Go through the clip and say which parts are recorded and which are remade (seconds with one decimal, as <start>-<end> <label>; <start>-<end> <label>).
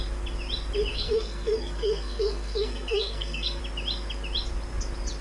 0.0-0.9 recorded; 0.9-3.6 remade; 3.6-5.2 recorded